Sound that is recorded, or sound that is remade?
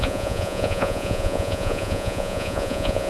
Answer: remade